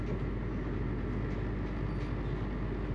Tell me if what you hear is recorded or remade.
recorded